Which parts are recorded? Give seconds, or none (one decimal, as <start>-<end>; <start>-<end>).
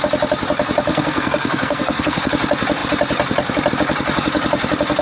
0.0-0.9; 2.3-5.0